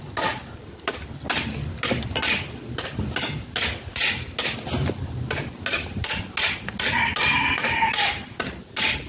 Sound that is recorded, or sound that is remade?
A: recorded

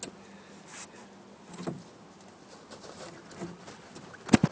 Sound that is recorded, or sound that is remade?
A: recorded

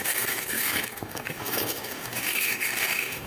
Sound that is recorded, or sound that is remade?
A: remade